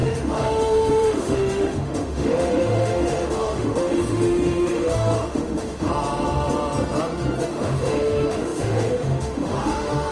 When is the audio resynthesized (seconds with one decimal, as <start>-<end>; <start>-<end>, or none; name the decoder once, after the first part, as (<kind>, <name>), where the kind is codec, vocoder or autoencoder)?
0.0-5.9 (autoencoder, DAC-VAE); 7.5-10.1